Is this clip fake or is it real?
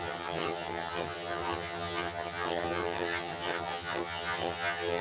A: fake